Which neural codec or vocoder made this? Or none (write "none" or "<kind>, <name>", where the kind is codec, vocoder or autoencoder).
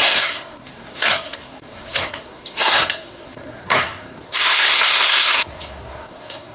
codec, SNAC